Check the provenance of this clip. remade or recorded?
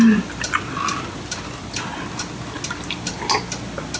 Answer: recorded